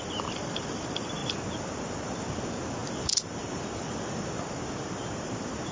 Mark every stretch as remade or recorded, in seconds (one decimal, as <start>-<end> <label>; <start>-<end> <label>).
0.0-5.7 recorded